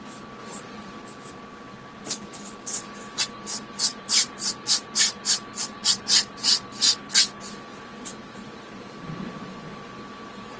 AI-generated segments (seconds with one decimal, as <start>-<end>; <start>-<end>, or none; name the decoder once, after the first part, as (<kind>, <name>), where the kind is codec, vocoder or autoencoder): 0.4-0.9 (vocoder, BigVGAN v2); 3.9-4.5